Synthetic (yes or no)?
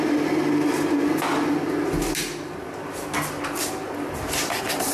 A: no